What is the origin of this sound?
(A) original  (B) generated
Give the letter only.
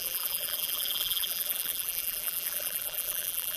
B